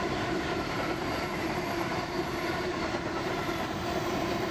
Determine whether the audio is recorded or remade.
remade